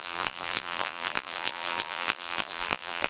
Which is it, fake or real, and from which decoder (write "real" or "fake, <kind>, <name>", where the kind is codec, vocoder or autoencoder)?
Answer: fake, vocoder, BigVGAN v2